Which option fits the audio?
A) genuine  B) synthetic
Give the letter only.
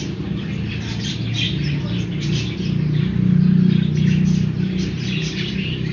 A